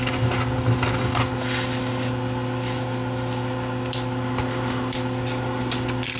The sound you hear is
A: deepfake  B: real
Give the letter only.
B